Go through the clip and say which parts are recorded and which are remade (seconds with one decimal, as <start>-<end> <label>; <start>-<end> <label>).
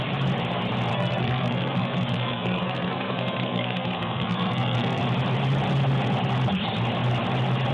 0.0-0.9 recorded; 0.9-5.0 remade; 5.0-7.7 recorded